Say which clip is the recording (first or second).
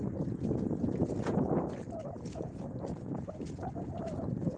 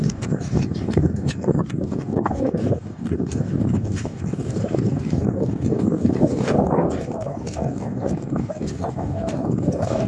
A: first